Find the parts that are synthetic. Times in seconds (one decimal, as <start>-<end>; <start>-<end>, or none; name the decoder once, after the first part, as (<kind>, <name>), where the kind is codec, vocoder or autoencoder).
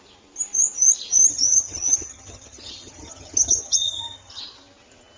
1.3-4.4 (vocoder, HiFi-GAN)